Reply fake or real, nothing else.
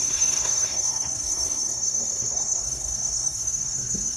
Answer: fake